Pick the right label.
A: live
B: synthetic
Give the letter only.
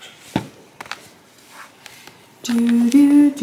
A